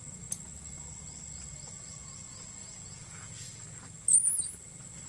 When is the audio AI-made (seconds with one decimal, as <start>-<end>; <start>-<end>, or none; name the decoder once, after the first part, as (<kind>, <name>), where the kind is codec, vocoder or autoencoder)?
2.6-3.5 (vocoder, Vocos)